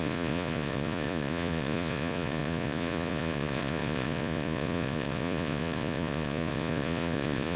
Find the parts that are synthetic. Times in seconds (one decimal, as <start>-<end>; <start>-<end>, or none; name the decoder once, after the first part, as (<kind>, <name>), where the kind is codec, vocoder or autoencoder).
0.0-7.6 (vocoder, Vocos)

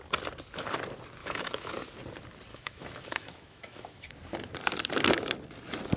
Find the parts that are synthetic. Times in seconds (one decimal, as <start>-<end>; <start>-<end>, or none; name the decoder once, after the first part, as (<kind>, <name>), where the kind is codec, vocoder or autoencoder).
1.2-1.7 (autoencoder, DAC-VAE); 2.5-4.1